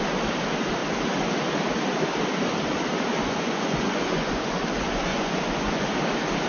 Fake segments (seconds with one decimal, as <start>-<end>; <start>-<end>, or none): 3.2-4.6; 5.1-5.9